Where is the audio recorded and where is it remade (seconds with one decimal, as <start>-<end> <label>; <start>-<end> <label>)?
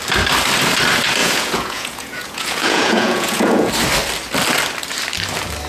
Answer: 0.0-1.2 recorded; 1.2-3.7 remade; 3.7-5.7 recorded